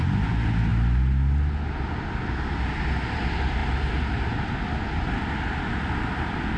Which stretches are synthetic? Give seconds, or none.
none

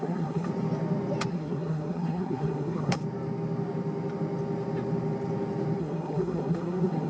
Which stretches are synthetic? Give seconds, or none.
0.0-0.5 (codec, SNAC); 1.3-3.0; 5.8-7.1

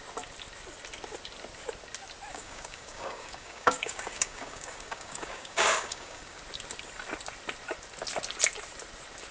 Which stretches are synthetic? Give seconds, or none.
2.3-6.4 (codec, DAC)